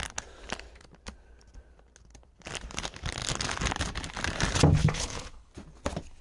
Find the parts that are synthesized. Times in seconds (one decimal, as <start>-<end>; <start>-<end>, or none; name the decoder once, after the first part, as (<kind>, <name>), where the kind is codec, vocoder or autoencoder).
4.8-5.5 (codec, HILCodec)